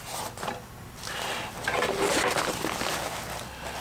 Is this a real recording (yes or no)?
yes